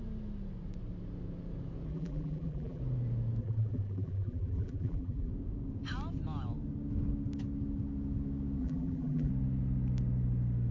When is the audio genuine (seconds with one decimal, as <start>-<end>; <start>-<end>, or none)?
0.0-1.9; 2.8-3.4; 5.3-8.6; 9.3-10.7

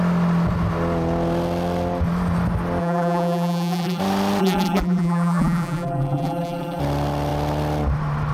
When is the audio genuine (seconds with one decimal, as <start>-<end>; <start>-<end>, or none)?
0.0-2.8; 4.0-4.4; 6.8-8.3

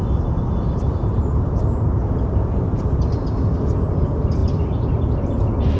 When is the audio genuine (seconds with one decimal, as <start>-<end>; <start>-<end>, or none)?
0.0-5.8

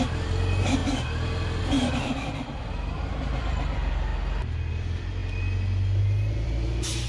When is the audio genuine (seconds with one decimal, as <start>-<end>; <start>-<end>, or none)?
4.1-4.7; 5.2-6.0